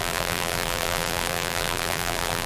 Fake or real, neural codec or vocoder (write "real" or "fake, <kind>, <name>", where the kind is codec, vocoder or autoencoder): fake, vocoder, BigVGAN v2